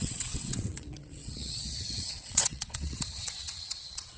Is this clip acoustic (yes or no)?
no